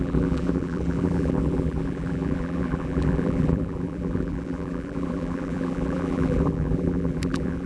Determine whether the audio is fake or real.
fake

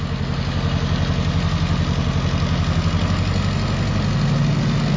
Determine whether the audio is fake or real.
real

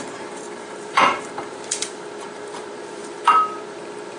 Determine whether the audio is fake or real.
fake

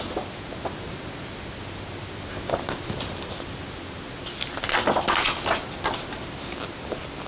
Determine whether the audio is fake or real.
real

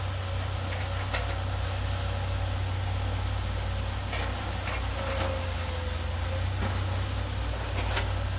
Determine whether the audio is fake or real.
real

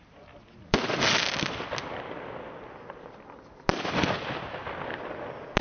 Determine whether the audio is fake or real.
real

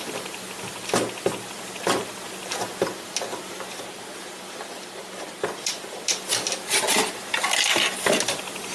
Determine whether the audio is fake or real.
real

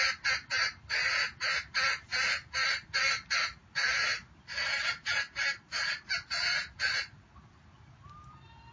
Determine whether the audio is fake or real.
real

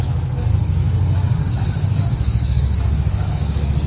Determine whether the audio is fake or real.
fake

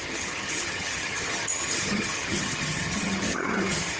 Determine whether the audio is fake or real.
fake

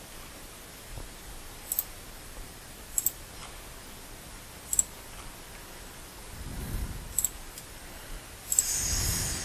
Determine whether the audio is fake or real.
real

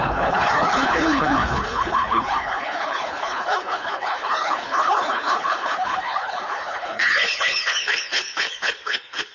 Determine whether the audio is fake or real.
fake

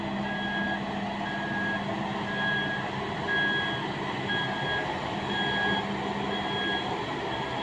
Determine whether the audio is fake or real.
real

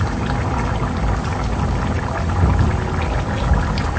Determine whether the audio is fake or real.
real